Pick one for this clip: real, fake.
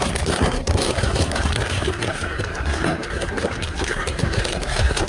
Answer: fake